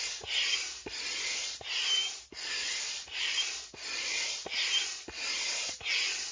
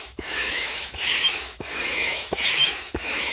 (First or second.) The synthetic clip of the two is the second